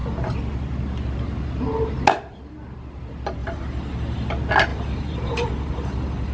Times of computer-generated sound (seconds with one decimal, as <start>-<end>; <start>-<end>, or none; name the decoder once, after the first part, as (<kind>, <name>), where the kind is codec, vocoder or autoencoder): 3.4-4.3 (vocoder, BigVGAN v2); 4.7-6.3

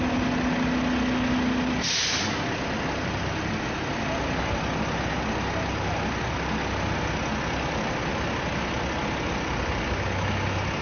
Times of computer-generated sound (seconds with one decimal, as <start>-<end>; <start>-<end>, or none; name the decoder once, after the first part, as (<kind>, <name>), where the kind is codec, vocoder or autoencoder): none

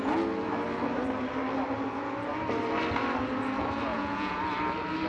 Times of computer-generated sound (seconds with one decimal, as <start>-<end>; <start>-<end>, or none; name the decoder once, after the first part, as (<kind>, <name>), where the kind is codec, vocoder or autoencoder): 3.9-4.4 (vocoder, Vocos)

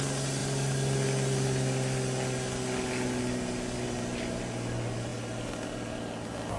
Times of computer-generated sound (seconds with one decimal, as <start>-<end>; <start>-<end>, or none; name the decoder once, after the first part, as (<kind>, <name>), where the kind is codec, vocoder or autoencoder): none

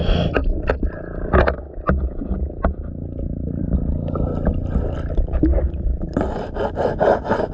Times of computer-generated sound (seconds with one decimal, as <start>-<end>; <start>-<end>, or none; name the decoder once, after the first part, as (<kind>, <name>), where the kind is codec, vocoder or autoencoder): none

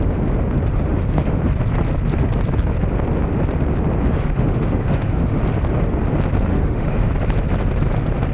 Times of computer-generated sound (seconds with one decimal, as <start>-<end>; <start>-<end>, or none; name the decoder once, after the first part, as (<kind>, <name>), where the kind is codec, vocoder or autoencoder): 0.7-1.4 (autoencoder, DAC-VAE); 4.1-5.4; 6.5-7.1